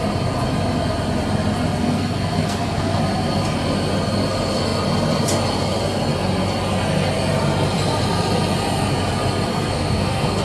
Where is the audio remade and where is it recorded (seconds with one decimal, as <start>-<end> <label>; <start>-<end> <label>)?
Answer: 0.0-1.8 recorded; 1.8-3.0 remade; 3.0-9.5 recorded; 9.5-10.4 remade